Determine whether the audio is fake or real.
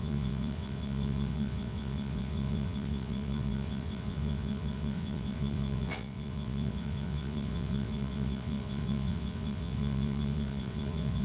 fake